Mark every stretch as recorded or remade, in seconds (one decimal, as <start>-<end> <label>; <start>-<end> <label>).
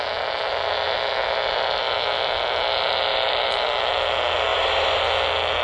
0.0-3.1 recorded; 3.1-3.9 remade; 3.9-4.5 recorded; 4.5-5.0 remade; 5.0-5.6 recorded